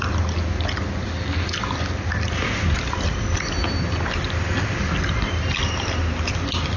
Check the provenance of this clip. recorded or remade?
recorded